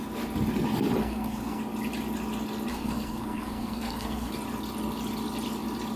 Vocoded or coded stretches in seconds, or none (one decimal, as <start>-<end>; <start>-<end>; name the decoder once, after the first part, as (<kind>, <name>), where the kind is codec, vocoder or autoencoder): 1.0-1.6 (codec, SNAC); 2.7-4.3